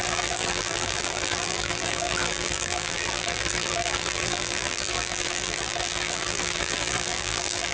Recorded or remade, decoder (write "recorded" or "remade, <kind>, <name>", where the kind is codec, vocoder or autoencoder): remade, vocoder, BigVGAN v2